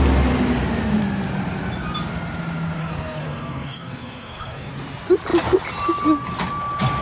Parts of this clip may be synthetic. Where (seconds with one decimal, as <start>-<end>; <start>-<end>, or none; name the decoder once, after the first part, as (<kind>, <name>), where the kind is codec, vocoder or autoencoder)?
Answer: 2.8-4.7 (codec, SNAC)